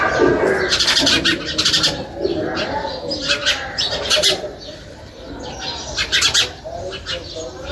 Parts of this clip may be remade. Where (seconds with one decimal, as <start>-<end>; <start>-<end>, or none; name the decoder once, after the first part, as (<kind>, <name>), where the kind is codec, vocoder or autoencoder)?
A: 3.4-5.1 (vocoder, BigVGAN v2)